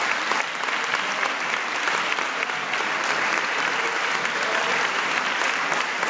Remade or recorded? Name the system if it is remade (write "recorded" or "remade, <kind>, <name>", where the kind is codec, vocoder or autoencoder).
remade, vocoder, BigVGAN v2